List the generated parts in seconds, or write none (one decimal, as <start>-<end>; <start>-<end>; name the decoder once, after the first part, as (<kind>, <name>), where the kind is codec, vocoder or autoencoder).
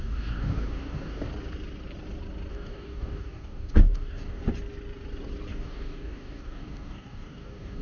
0.0-1.3 (codec, DAC); 2.5-4.4; 5.5-7.8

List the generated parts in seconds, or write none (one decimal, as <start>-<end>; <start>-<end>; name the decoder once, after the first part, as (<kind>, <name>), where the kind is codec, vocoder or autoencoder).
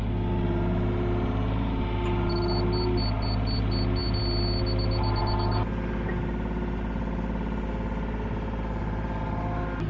none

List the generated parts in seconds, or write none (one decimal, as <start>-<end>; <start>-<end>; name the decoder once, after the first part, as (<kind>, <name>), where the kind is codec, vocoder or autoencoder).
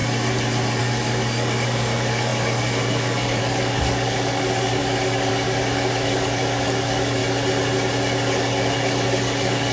0.8-7.2 (codec, DAC); 8.2-9.7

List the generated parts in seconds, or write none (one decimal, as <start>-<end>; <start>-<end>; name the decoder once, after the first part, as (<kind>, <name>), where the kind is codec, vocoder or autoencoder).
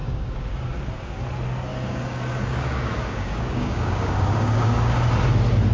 0.0-1.2 (codec, DAC); 1.7-5.1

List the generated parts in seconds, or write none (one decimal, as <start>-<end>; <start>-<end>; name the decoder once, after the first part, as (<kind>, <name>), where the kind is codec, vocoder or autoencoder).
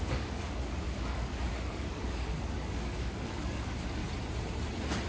0.0-4.0 (codec, DAC)